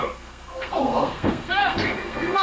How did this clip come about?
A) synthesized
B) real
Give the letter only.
A